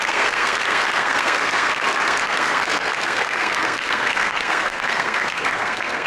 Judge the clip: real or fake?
fake